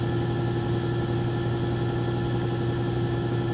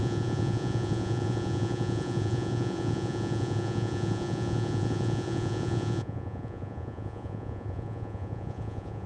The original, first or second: first